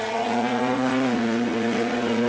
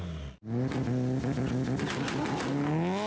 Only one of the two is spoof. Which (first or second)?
first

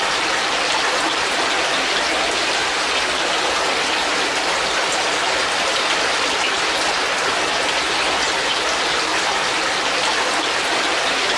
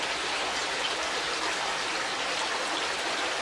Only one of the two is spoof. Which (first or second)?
second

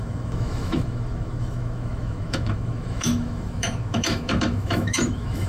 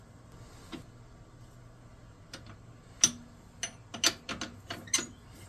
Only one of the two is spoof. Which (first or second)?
first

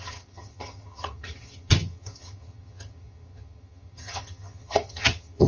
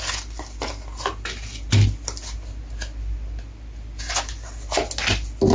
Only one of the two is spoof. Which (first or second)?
first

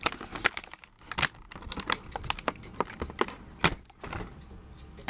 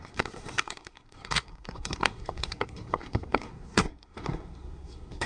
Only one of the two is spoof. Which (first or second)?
second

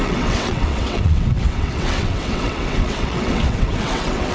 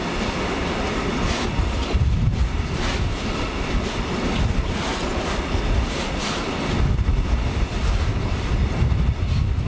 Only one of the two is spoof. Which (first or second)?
first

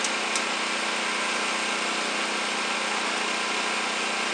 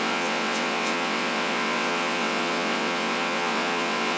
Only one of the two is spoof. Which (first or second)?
second